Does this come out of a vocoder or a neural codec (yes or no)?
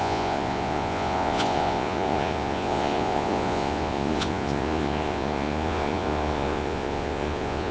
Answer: yes